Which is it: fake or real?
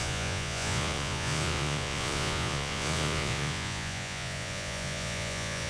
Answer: fake